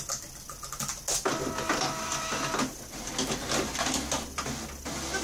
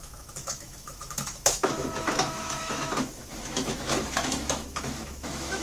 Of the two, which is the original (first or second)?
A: first